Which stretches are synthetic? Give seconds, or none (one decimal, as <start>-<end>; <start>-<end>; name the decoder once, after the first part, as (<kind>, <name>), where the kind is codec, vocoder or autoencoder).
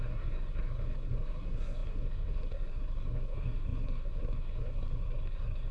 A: 0.0-5.7 (codec, SNAC)